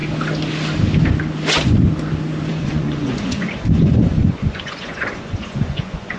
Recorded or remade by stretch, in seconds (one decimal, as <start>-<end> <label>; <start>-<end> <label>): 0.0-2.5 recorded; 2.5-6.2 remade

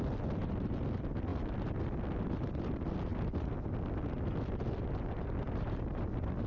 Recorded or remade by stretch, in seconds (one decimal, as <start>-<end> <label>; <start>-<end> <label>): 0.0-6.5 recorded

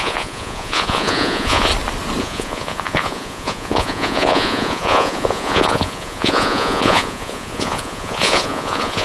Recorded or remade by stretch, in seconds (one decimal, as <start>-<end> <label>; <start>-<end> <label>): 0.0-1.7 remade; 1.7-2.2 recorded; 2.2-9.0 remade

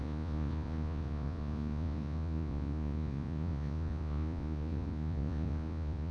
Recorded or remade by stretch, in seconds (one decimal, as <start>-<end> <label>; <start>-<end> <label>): 0.0-6.1 remade

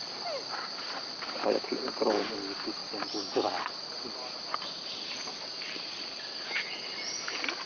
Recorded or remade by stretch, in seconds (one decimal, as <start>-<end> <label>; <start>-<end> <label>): 0.0-1.7 recorded; 1.7-2.3 remade; 2.3-7.7 recorded